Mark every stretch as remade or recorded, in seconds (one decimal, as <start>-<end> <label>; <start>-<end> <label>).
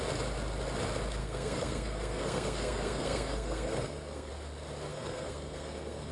0.0-1.2 recorded; 1.2-4.3 remade; 4.3-4.9 recorded; 4.9-6.1 remade